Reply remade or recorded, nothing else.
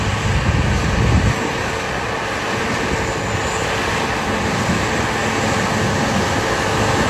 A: recorded